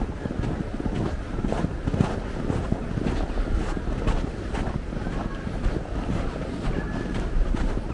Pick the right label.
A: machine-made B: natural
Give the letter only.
B